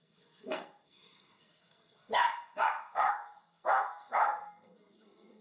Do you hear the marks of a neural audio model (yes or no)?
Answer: yes